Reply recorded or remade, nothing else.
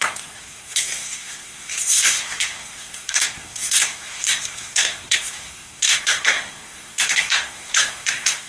remade